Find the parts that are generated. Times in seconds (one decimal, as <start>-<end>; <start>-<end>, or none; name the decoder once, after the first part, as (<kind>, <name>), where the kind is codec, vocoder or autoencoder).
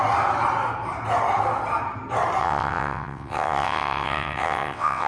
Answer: 2.4-5.1 (vocoder, WaveNeXt)